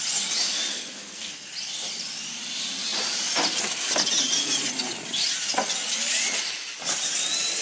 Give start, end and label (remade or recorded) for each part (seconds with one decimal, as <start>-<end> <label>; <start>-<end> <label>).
0.0-0.7 recorded; 0.7-1.5 remade; 1.5-7.6 recorded